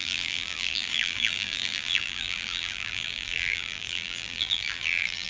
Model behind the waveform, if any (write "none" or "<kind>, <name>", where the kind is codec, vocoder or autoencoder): vocoder, BigVGAN v2